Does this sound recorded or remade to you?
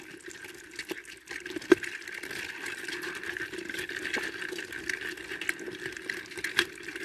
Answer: recorded